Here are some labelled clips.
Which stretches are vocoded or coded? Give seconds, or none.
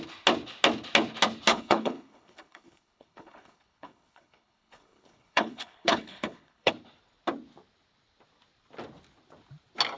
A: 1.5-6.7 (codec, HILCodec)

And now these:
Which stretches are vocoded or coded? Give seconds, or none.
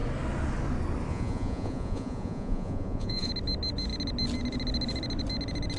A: 1.1-3.3 (vocoder, Vocos)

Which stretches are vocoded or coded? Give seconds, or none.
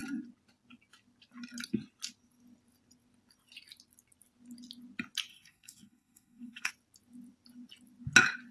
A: 5.3-6.7 (codec, SNAC)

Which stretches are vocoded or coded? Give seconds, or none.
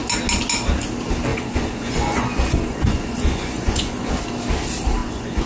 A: 1.3-4.1 (vocoder, Vocos); 5.0-5.5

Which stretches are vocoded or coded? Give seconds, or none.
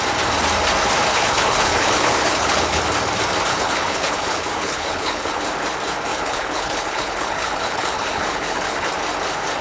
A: 1.1-2.8 (codec, HILCodec); 3.5-5.4; 6.1-8.9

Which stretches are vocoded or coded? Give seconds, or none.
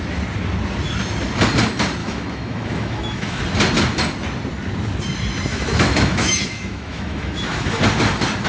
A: 2.0-3.4 (autoencoder, DAC-VAE); 5.5-7.8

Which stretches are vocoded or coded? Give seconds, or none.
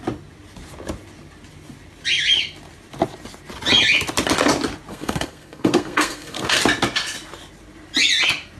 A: 4.9-6.6 (codec, SNAC)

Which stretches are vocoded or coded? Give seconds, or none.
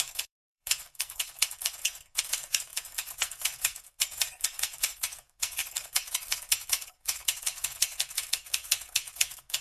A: 0.0-9.6 (codec, SNAC)